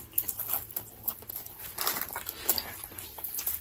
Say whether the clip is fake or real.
real